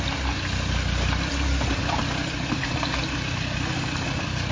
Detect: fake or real real